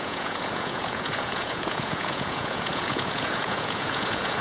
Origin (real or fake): fake